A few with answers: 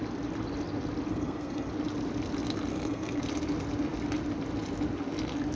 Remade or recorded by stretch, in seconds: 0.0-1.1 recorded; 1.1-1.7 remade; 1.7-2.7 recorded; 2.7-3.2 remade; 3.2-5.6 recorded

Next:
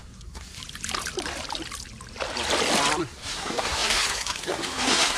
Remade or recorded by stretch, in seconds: 0.0-0.6 remade; 0.6-3.0 recorded; 3.0-5.2 remade